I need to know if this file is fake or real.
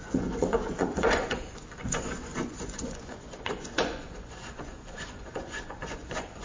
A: fake